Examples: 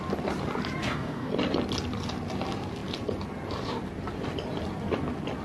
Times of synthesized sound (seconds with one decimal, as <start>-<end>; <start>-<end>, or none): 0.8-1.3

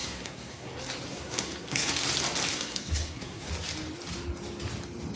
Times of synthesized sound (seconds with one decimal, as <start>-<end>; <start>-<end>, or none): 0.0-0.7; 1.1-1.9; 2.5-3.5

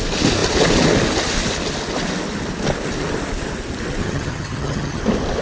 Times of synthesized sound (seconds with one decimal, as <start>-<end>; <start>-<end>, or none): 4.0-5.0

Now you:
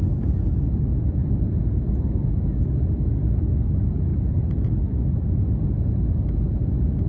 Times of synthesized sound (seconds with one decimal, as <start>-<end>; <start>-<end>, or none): 0.9-1.9

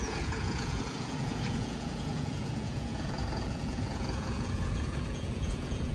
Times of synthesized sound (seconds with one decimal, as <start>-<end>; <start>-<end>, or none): 0.0-5.9

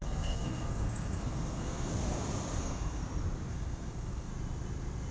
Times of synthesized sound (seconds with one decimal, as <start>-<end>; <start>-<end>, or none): 0.0-1.9; 2.6-3.0; 3.5-4.3

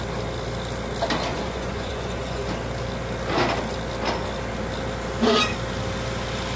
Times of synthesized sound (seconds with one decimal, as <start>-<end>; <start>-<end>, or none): 1.3-2.5